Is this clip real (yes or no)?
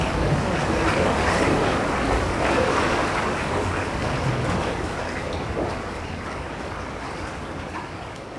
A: no